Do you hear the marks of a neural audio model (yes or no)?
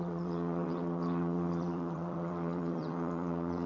yes